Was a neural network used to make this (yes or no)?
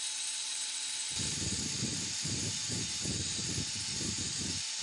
yes